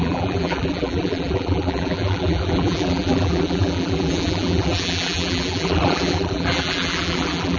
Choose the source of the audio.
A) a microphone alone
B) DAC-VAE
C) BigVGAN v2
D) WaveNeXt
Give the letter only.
C